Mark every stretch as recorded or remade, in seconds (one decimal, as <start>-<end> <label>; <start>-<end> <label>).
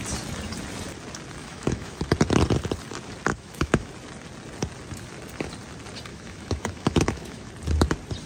0.0-1.4 recorded; 1.4-2.0 remade; 2.0-3.3 recorded; 3.3-3.9 remade; 3.9-6.1 recorded; 6.1-7.5 remade; 7.5-8.3 recorded